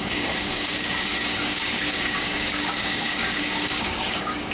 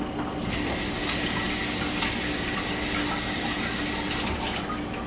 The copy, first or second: first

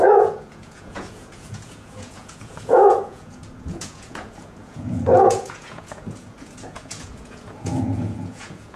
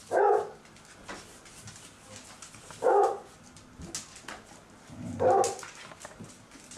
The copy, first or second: first